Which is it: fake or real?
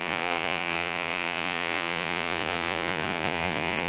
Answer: fake